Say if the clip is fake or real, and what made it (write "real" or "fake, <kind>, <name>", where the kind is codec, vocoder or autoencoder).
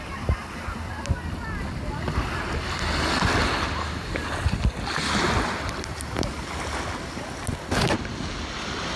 real